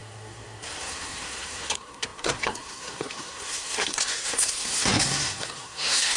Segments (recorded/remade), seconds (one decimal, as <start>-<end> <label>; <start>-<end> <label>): 0.0-6.2 remade